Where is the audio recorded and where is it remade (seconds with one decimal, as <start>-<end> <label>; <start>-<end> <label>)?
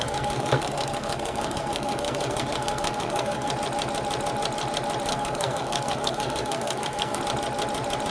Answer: 0.0-3.5 remade; 3.5-5.1 recorded; 5.1-7.2 remade; 7.2-8.1 recorded